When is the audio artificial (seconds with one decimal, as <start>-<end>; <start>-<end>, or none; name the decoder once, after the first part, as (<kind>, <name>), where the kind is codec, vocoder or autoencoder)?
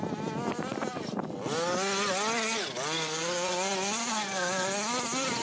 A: none